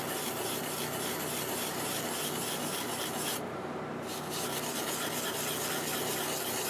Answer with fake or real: real